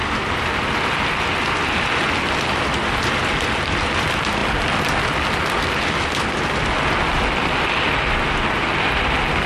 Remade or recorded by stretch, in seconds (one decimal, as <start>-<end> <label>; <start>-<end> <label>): 0.0-9.5 recorded